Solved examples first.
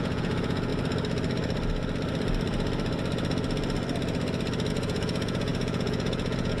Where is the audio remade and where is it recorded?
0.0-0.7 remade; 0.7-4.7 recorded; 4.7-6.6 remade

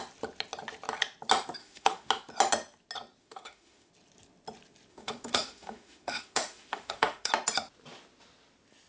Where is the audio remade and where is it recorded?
0.0-1.6 recorded; 1.6-2.1 remade; 2.1-3.2 recorded; 3.2-3.9 remade; 3.9-4.9 recorded; 4.9-7.3 remade; 7.3-8.9 recorded